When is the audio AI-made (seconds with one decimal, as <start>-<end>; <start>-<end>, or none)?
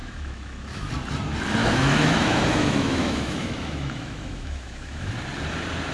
0.0-0.9; 1.6-5.1